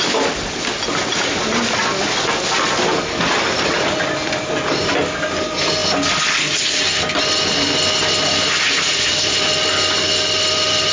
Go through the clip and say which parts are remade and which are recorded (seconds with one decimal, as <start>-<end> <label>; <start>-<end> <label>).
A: 0.0-10.9 recorded